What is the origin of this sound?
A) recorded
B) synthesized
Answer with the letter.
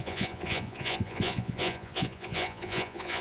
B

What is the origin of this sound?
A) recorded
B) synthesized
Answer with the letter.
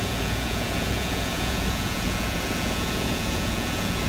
B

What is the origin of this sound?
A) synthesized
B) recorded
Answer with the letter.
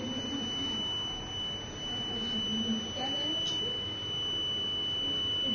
B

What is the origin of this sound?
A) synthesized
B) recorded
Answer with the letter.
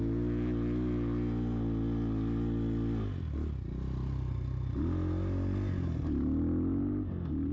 B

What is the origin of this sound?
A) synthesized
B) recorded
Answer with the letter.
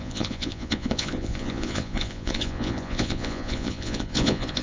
A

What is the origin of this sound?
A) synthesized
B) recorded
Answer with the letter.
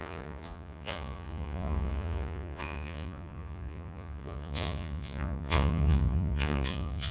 A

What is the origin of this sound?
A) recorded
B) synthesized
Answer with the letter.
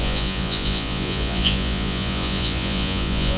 B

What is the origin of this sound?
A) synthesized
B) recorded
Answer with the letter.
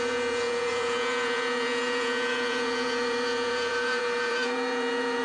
A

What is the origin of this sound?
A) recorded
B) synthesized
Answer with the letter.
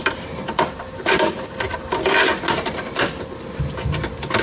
A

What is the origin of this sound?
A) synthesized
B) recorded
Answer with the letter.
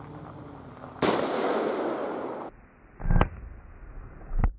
B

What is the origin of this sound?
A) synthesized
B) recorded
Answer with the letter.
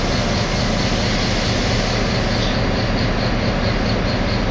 B